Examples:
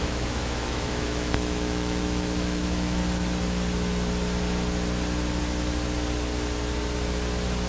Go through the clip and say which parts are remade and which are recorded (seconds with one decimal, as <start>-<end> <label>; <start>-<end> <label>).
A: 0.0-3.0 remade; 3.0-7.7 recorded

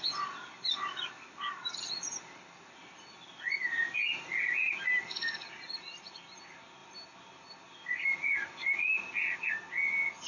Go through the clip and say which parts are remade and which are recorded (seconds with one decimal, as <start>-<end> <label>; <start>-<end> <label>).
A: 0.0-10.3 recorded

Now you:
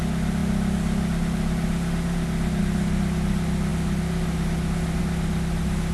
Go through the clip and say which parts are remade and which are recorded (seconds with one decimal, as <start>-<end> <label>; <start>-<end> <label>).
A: 0.0-5.9 recorded

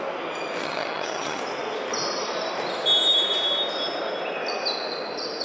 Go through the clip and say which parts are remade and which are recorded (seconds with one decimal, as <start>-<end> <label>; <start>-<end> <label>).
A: 0.0-0.6 recorded; 0.6-1.4 remade; 1.4-5.4 recorded

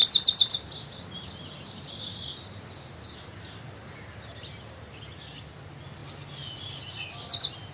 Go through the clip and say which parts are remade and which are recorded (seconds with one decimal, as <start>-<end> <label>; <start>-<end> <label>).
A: 0.0-7.7 recorded

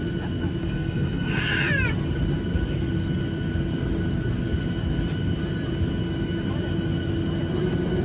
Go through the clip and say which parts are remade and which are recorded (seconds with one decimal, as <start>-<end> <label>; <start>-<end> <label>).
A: 0.0-0.6 recorded; 0.6-1.4 remade; 1.4-8.0 recorded

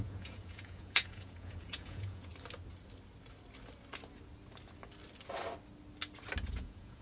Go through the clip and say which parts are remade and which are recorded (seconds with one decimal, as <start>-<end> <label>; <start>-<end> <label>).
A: 0.0-2.3 remade; 2.3-6.5 recorded; 6.5-7.0 remade